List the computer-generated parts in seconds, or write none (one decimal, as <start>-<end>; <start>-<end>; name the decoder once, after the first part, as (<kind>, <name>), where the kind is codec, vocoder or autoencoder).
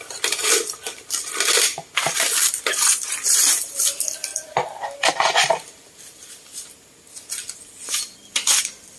0.0-1.7 (vocoder, BigVGAN v2); 2.5-6.5; 8.6-9.0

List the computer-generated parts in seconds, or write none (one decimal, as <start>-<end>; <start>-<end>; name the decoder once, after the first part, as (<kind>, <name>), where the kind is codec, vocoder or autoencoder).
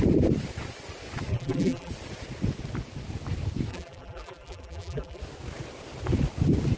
1.3-1.9 (vocoder, BigVGAN v2); 3.7-5.2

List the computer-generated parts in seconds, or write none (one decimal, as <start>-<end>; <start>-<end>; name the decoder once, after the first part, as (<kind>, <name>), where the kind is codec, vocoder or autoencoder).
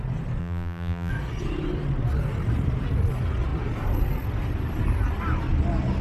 0.4-1.1 (vocoder, BigVGAN v2)